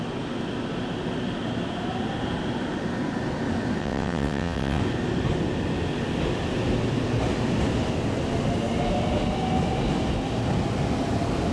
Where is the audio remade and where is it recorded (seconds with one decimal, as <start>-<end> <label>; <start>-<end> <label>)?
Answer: 0.0-3.8 recorded; 3.8-4.8 remade; 4.8-11.5 recorded